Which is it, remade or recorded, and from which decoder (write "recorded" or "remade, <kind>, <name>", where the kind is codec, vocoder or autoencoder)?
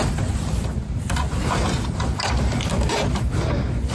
recorded